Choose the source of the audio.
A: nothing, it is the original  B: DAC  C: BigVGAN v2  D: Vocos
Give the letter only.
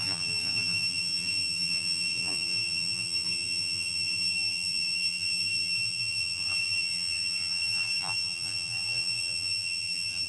C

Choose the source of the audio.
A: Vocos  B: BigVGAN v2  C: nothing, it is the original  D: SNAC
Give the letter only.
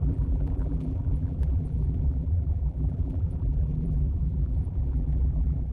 B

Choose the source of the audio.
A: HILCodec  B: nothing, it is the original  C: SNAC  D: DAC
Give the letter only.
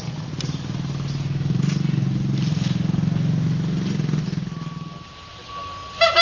B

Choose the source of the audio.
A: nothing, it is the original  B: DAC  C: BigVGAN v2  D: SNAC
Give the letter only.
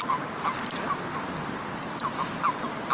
A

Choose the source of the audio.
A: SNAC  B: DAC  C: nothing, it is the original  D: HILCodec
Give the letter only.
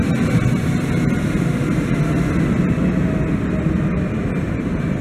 C